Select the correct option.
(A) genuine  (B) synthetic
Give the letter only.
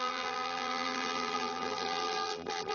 B